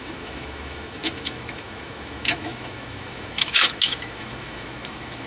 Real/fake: fake